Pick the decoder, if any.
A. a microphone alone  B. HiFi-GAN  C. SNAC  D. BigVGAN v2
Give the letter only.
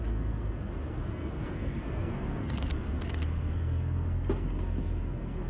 C